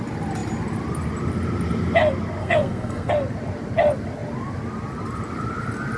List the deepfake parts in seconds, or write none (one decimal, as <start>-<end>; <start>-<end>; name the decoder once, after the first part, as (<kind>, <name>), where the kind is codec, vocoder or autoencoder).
2.4-3.1 (codec, SNAC)